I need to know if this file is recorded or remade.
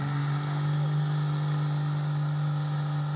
recorded